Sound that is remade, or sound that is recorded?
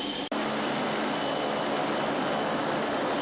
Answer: recorded